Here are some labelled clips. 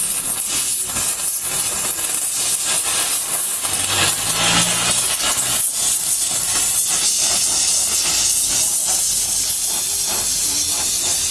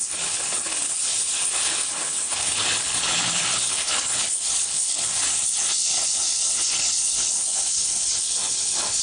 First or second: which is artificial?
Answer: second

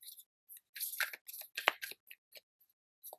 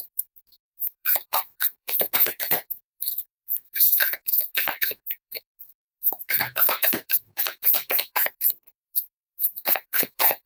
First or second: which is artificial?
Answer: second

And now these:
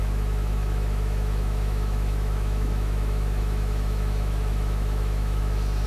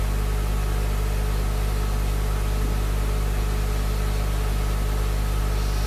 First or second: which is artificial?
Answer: first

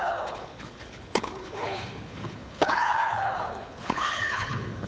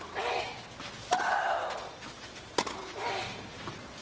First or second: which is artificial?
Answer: first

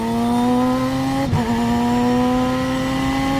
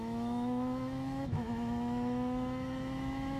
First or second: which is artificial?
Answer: second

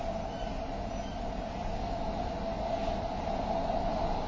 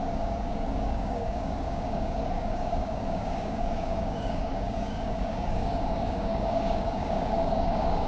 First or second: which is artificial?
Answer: second